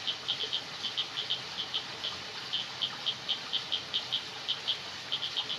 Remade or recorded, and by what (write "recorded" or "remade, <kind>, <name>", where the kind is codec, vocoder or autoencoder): recorded